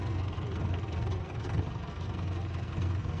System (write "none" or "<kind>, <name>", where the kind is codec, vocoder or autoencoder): codec, SNAC